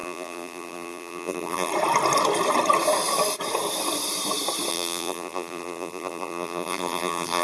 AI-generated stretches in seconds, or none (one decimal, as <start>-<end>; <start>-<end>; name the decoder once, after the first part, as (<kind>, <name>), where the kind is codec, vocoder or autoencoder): 0.0-1.7 (vocoder, BigVGAN v2); 4.7-7.4